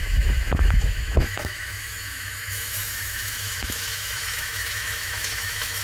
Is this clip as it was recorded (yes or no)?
no